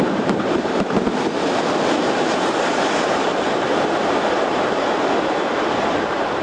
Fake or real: fake